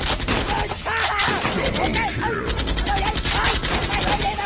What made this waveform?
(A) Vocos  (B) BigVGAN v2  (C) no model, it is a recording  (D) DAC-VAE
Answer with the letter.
C